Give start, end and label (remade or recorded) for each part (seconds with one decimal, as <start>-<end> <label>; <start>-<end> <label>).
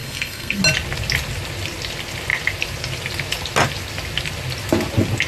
0.0-0.6 remade; 0.6-5.3 recorded